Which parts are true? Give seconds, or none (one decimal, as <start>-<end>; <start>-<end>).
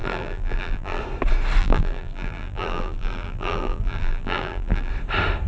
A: 1.0-1.6; 4.9-5.5